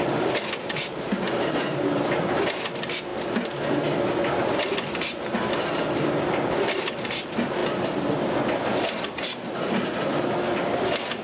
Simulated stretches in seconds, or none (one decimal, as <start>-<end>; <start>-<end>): none